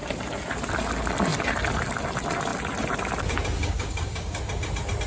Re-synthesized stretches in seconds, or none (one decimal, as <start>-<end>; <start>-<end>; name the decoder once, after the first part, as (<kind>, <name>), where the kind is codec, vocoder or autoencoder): 3.6-4.4 (codec, DAC)